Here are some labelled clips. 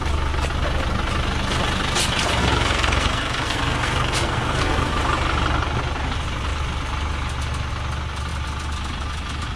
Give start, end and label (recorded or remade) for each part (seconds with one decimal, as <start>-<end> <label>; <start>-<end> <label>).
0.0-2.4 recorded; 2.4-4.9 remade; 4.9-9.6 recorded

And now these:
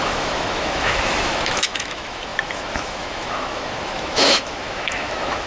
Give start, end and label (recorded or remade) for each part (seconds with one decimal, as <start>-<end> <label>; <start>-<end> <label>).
0.0-5.5 remade

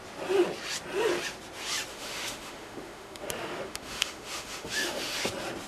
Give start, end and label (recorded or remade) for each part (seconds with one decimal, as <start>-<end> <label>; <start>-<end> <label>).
0.0-1.9 recorded; 1.9-5.3 remade; 5.3-5.7 recorded

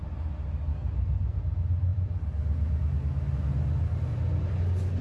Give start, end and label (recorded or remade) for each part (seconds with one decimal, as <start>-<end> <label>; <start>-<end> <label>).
0.0-0.7 recorded; 0.7-1.4 remade; 1.4-5.0 recorded

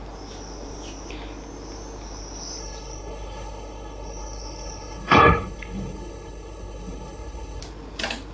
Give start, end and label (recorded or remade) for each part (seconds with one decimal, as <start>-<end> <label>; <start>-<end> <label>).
0.0-2.6 recorded; 2.6-7.6 remade; 7.6-8.3 recorded

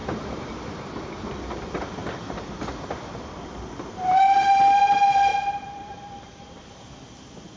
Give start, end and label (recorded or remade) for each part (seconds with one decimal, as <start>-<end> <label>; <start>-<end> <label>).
0.0-0.5 remade; 0.5-5.3 recorded; 5.3-6.6 remade; 6.6-7.6 recorded